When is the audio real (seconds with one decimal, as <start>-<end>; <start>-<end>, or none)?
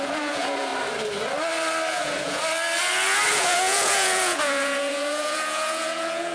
0.7-1.9; 2.4-3.3